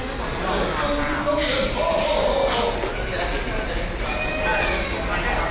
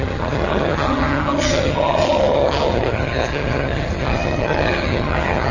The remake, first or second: second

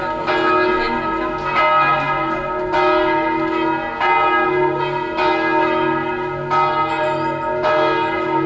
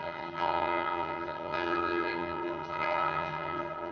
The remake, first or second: second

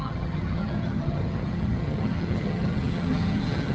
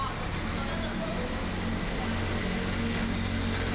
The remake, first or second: first